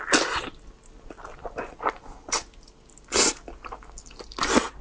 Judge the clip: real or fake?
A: real